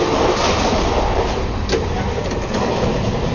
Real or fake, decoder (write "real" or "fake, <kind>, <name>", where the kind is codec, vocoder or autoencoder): fake, vocoder, BigVGAN v2